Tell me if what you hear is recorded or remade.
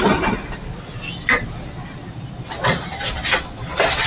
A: recorded